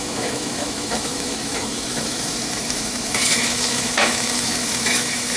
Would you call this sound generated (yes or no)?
yes